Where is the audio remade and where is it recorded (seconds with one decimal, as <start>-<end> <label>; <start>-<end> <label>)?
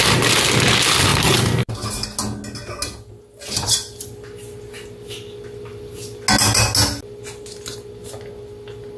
0.0-1.1 recorded; 1.1-1.7 remade; 1.7-9.0 recorded